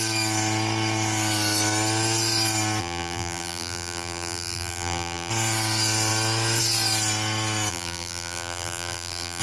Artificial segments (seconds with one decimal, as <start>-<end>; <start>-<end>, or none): 2.8-5.3; 7.7-9.4